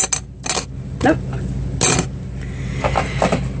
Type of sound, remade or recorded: recorded